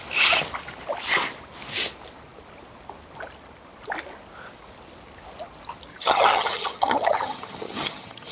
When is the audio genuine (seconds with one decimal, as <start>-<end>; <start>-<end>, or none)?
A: 0.0-5.9